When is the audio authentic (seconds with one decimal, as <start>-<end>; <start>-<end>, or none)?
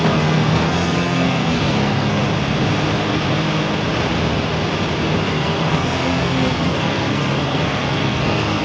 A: 2.2-5.2